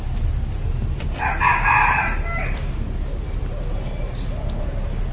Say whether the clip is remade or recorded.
recorded